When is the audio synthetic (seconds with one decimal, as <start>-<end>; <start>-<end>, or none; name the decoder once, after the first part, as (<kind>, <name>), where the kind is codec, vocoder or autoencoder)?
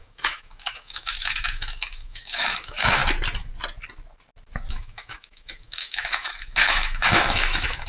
0.0-3.0 (autoencoder, DAC-VAE); 4.7-7.9